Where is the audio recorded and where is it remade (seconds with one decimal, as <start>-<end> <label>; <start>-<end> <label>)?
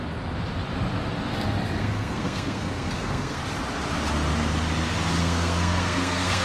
0.0-1.8 recorded; 1.8-3.4 remade; 3.4-5.2 recorded; 5.2-6.4 remade